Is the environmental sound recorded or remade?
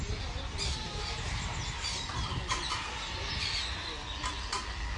recorded